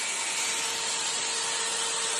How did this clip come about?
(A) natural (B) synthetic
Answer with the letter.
A